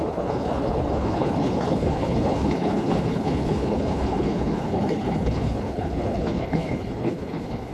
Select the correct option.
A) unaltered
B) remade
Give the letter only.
B